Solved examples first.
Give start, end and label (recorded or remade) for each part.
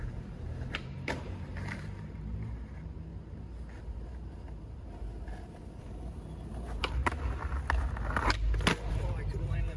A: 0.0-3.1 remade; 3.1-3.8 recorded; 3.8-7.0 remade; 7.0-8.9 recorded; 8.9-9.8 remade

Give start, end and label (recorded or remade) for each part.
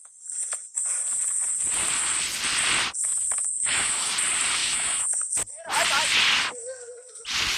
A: 0.0-3.4 recorded; 3.4-4.1 remade; 4.1-4.6 recorded; 4.6-5.3 remade; 5.3-7.6 recorded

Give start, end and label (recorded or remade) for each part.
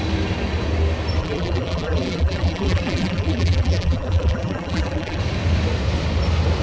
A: 0.0-1.2 recorded; 1.2-5.2 remade; 5.2-6.6 recorded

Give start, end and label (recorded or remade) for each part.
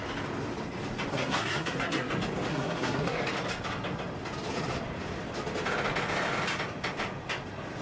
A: 0.0-1.1 recorded; 1.1-2.1 remade; 2.1-2.5 recorded; 2.5-3.2 remade; 3.2-7.8 recorded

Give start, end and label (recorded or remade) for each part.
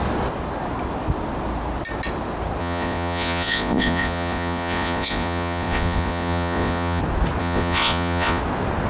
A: 0.0-2.6 recorded; 2.6-7.0 remade; 7.0-7.4 recorded; 7.4-8.4 remade; 8.4-8.9 recorded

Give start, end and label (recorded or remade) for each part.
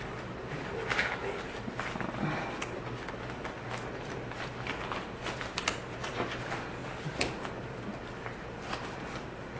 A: 0.0-9.6 recorded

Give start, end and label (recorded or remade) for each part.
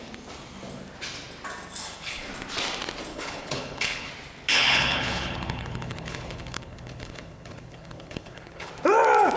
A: 0.0-1.8 recorded; 1.8-2.3 remade; 2.3-3.1 recorded; 3.1-4.1 remade; 4.1-4.5 recorded; 4.5-8.7 remade; 8.7-9.4 recorded